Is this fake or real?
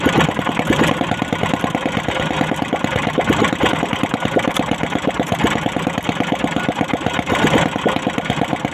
real